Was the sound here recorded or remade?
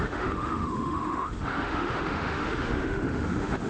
remade